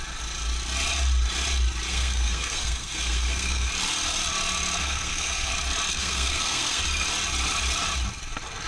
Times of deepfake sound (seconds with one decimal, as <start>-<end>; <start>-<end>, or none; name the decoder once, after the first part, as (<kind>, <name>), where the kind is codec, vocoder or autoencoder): 1.9-3.7 (codec, SNAC); 4.8-5.5; 5.9-6.8